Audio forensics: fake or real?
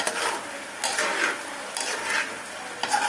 real